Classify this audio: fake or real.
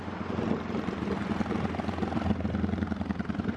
real